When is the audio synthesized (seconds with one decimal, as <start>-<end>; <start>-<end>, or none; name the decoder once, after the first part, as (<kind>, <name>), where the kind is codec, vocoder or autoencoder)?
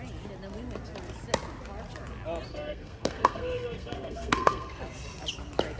2.5-4.8 (codec, SNAC)